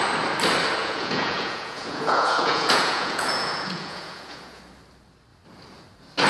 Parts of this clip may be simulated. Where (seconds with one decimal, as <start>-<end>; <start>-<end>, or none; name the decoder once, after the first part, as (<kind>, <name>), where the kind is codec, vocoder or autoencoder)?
0.8-4.6 (vocoder, Vocos)